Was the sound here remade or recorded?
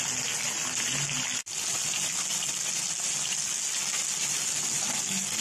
recorded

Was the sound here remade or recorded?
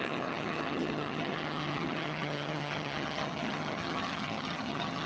remade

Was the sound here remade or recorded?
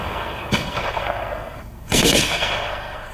remade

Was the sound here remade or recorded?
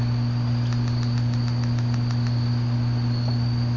recorded